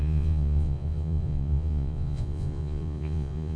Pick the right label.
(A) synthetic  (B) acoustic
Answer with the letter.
A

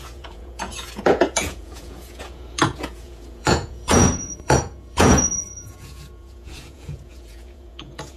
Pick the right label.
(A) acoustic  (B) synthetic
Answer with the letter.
B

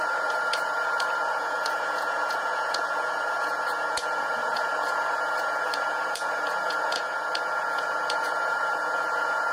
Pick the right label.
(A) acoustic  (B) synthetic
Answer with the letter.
B